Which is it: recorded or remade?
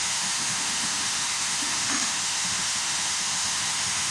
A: remade